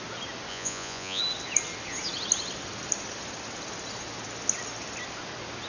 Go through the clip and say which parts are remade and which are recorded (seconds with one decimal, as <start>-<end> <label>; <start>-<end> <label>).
0.0-0.5 recorded; 0.5-1.2 remade; 1.2-5.7 recorded